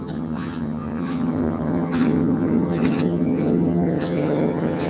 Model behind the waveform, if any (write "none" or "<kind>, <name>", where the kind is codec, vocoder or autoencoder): vocoder, HiFi-GAN